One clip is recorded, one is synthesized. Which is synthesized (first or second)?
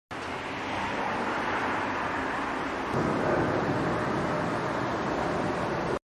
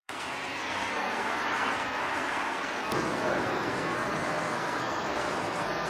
second